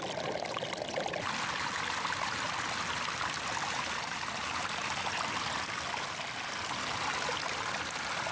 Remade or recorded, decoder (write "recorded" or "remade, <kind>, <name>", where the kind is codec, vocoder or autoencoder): recorded